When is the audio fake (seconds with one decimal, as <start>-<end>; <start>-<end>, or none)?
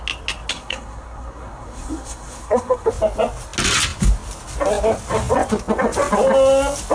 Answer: 0.5-2.9